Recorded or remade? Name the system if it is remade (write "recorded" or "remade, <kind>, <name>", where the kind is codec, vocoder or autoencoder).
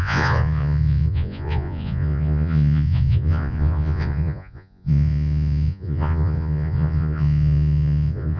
remade, vocoder, Vocos